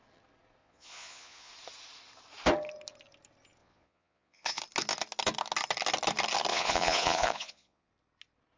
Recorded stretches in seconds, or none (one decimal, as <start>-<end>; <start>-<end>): 0.0-0.6; 1.5-3.6; 4.6-6.5; 7.9-8.6